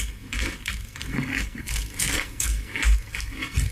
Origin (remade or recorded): remade